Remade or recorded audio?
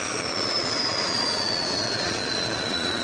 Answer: remade